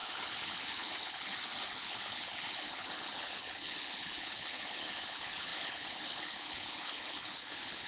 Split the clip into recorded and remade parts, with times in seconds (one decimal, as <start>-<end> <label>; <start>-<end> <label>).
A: 0.0-7.9 remade